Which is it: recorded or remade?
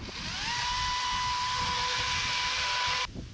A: recorded